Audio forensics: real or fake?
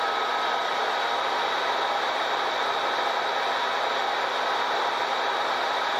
fake